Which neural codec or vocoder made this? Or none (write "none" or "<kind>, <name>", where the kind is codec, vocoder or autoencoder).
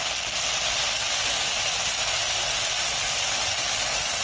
none